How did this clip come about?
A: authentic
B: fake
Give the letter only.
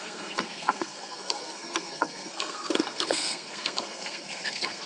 B